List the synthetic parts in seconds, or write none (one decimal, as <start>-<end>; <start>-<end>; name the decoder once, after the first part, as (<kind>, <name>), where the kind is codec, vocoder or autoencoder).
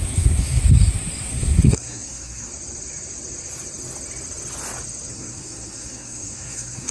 0.0-0.6 (codec, SNAC); 1.3-2.5; 5.1-6.9